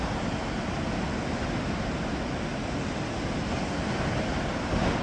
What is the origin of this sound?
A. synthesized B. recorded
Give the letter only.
B